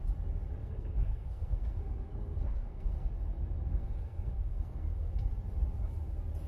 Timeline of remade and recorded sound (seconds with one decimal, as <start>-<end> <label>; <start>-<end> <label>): 0.0-0.6 recorded; 0.6-3.1 remade; 3.1-3.7 recorded; 3.7-5.3 remade; 5.3-6.5 recorded